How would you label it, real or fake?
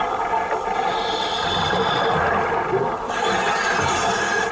real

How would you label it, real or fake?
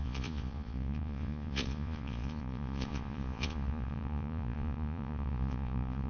fake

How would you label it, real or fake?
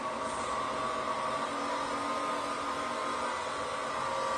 real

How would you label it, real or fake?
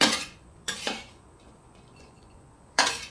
fake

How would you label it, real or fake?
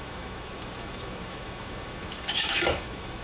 fake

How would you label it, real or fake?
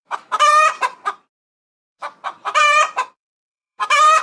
fake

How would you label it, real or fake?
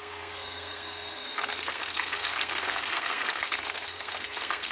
fake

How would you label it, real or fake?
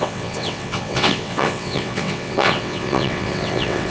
fake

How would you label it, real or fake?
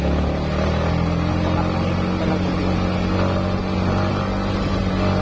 real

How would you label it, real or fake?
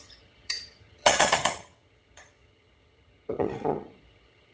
fake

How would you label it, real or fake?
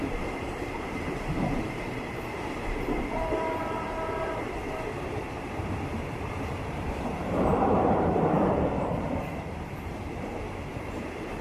fake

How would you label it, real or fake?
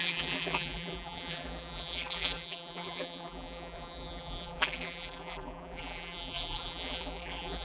fake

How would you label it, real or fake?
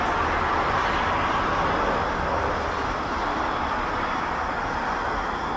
real